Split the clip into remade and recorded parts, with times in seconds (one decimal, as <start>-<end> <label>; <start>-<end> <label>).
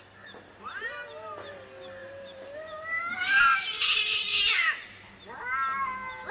0.0-2.0 recorded; 2.0-3.1 remade; 3.1-6.3 recorded